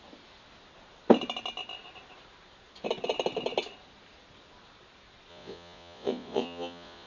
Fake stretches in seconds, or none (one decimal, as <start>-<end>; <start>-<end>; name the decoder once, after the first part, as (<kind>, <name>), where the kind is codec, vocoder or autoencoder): 5.3-7.1 (vocoder, Vocos)